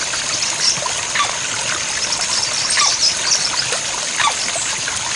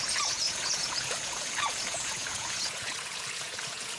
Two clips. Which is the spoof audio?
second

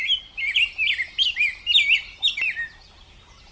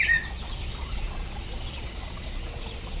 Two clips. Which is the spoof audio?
second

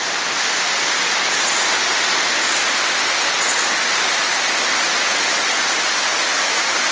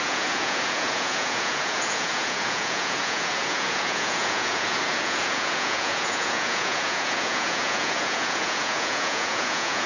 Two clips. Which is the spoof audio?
second